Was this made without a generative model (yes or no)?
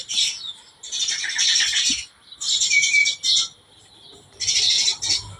yes